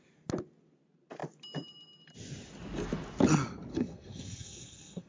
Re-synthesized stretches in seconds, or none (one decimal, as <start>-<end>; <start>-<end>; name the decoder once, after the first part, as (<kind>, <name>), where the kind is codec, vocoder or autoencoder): 3.7-5.1 (codec, SNAC)